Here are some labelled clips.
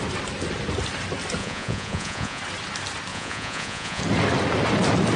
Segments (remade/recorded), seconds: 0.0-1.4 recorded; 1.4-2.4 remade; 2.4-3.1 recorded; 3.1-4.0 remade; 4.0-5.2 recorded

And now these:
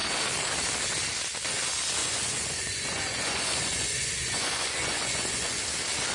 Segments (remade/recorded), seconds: 0.0-2.0 recorded; 2.0-5.6 remade; 5.6-6.1 recorded

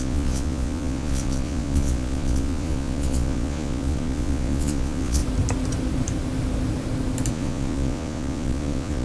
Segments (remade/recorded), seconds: 0.0-5.2 remade; 5.2-7.3 recorded; 7.3-9.0 remade

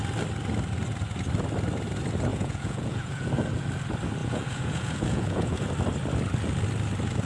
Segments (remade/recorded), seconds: 0.0-2.3 recorded; 2.3-3.3 remade; 3.3-4.2 recorded; 4.2-5.7 remade; 5.7-7.3 recorded

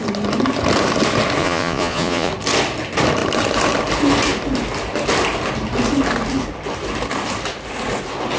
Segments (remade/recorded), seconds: 0.0-1.4 recorded; 1.4-2.3 remade; 2.3-8.4 recorded

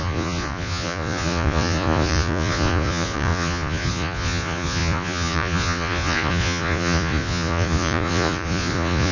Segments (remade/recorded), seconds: 0.0-9.1 remade

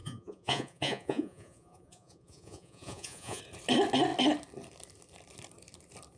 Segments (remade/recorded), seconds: 0.0-3.4 remade; 3.4-6.2 recorded

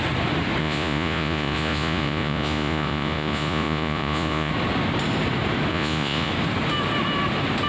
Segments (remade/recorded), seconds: 0.0-0.6 recorded; 0.6-4.5 remade; 4.5-5.7 recorded; 5.7-6.3 remade; 6.3-7.7 recorded